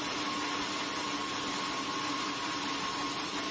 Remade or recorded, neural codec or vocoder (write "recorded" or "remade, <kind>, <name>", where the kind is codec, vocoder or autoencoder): recorded